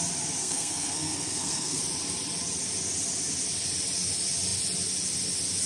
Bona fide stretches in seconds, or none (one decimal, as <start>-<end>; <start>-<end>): 0.0-0.4; 1.8-5.7

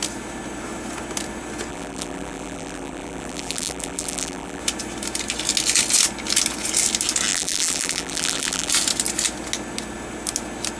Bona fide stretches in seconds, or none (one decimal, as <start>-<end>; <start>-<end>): 0.0-1.7; 4.6-7.3; 8.7-10.8